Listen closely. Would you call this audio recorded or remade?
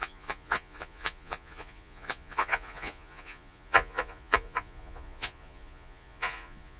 remade